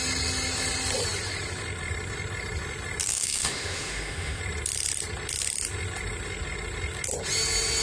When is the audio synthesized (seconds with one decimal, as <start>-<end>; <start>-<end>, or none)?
3.1-4.4

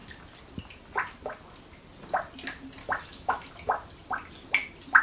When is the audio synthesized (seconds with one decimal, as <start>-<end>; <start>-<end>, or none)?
2.8-3.5

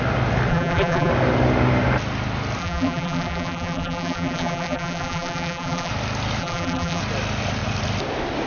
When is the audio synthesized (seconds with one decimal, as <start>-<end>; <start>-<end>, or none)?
0.5-1.1; 2.6-5.9; 6.4-7.0

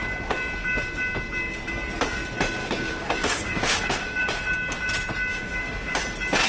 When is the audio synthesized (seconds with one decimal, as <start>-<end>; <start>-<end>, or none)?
2.6-4.4; 5.3-6.0

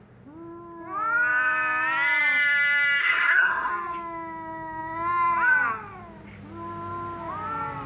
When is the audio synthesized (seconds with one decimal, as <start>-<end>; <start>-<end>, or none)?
3.0-3.7

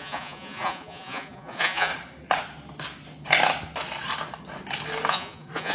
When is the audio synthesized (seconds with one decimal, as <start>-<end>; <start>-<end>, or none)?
0.0-1.9; 5.1-5.7

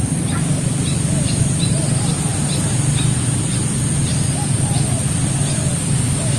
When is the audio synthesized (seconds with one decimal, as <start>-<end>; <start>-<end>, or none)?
none